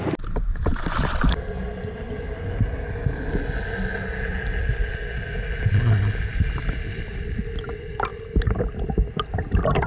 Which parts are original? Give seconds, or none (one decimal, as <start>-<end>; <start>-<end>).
0.0-9.9